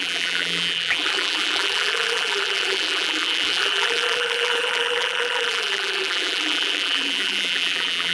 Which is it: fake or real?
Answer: fake